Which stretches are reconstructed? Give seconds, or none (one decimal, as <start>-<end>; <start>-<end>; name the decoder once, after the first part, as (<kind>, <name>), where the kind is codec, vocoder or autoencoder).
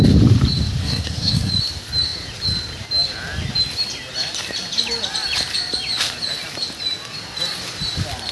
0.8-1.5 (codec, SNAC)